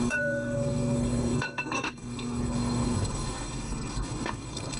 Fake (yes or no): yes